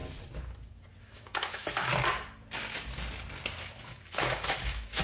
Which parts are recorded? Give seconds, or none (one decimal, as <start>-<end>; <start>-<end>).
0.0-1.0; 1.9-3.6